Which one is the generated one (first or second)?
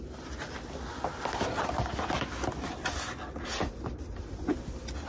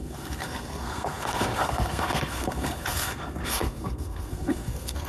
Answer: second